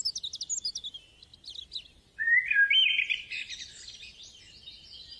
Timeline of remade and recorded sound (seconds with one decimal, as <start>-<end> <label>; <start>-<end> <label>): 0.0-5.2 recorded